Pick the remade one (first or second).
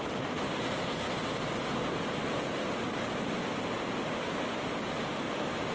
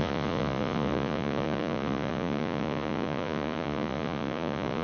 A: second